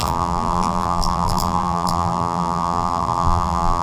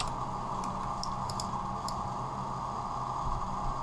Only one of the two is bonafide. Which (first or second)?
second